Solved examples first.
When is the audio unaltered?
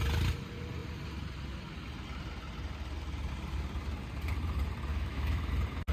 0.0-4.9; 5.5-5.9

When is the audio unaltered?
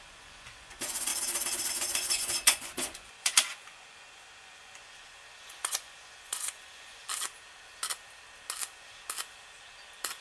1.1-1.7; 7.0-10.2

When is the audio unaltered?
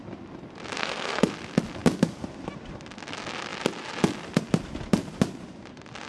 0.0-0.8; 1.3-6.1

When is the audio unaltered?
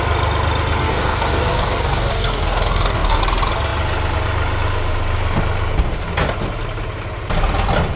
0.0-0.8; 3.2-8.0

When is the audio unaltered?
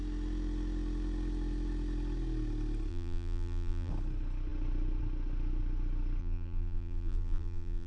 0.0-2.9; 3.9-6.2